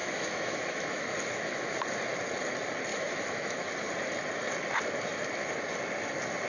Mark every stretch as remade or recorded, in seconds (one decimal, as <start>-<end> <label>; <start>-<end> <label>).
0.0-1.7 remade; 1.7-2.9 recorded; 2.9-3.7 remade; 3.7-6.5 recorded